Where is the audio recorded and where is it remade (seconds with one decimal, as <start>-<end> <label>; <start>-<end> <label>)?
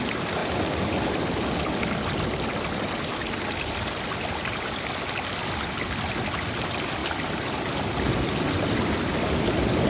0.0-9.9 recorded